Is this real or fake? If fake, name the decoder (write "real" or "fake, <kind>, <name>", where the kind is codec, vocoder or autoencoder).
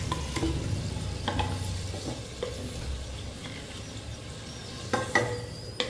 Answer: real